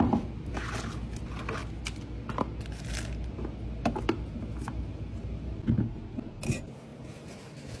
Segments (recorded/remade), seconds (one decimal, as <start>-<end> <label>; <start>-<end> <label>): 0.0-7.8 recorded